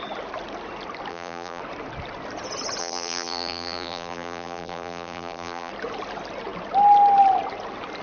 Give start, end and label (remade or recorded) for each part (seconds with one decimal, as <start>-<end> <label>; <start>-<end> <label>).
0.0-1.1 recorded; 1.1-1.6 remade; 1.6-2.8 recorded; 2.8-5.7 remade; 5.7-8.0 recorded